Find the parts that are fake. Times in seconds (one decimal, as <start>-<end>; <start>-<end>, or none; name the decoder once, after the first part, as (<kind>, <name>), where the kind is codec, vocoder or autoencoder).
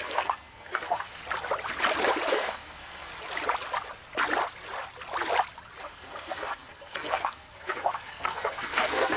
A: 0.0-1.2 (codec, SNAC); 2.3-3.1; 5.8-9.2